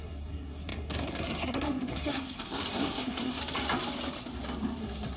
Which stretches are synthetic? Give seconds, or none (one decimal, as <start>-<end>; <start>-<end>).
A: 0.0-3.4; 4.8-5.2